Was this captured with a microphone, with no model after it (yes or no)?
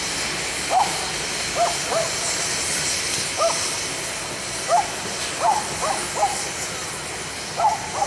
yes